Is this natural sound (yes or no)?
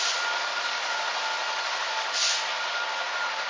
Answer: yes